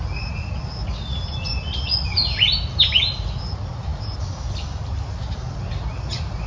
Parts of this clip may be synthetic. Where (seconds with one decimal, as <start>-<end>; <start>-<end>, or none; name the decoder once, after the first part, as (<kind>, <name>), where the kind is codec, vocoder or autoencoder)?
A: none

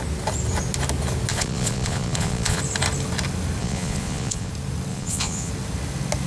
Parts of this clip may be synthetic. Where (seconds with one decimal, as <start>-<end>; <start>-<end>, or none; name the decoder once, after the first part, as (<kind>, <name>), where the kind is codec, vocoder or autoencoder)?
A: 1.3-2.6 (vocoder, Vocos); 3.6-4.5; 4.9-5.5

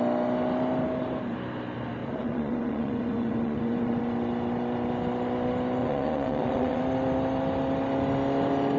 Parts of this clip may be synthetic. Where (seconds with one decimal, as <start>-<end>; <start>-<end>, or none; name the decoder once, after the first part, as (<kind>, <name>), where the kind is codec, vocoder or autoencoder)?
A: 2.0-4.0 (vocoder, Vocos); 5.8-6.8